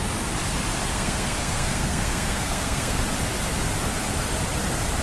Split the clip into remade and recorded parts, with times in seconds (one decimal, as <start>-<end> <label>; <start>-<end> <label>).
0.0-0.9 recorded; 0.9-3.0 remade; 3.0-5.0 recorded